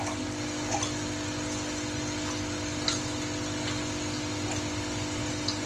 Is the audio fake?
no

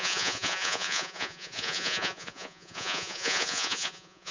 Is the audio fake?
yes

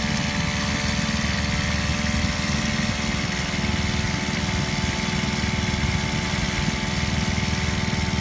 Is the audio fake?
no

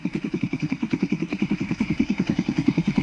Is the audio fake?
yes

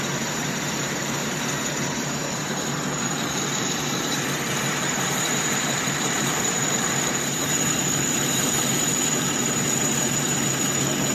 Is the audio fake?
yes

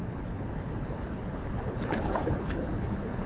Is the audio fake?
yes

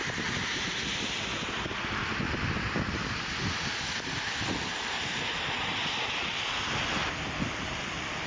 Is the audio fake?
no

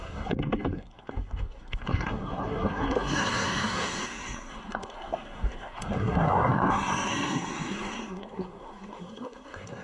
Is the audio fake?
yes